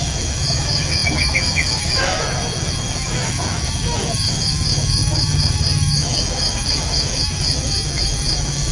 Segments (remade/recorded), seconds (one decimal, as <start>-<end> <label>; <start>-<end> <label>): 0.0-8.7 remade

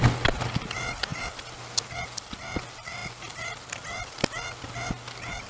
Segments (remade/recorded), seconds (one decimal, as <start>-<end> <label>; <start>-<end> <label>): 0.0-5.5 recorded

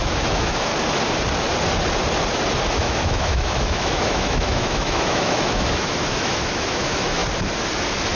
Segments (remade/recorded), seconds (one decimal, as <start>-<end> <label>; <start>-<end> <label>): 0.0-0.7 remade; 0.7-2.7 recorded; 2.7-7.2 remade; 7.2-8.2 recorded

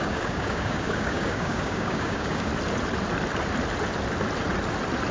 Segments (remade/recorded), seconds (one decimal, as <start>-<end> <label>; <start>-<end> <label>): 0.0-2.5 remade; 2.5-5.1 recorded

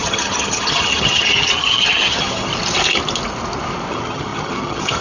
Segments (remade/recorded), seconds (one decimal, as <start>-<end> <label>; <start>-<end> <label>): 0.0-2.5 remade; 2.5-3.9 recorded; 3.9-5.0 remade